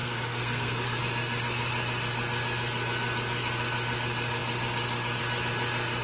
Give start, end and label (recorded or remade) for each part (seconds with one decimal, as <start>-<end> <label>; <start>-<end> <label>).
0.0-1.0 remade; 1.0-6.0 recorded